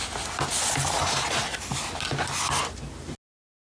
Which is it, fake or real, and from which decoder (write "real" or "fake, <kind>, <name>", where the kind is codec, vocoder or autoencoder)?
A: real